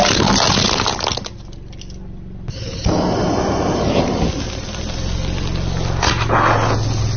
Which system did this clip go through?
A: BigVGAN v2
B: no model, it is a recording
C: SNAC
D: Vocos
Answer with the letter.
B